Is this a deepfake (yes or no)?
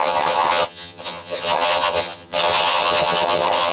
yes